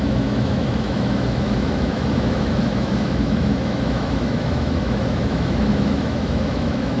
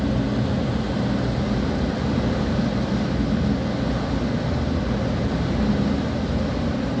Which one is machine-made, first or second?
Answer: first